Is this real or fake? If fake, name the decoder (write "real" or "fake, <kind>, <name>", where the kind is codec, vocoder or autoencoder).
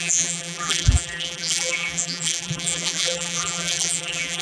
fake, vocoder, BigVGAN v2